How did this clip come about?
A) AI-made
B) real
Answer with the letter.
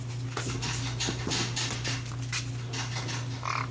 B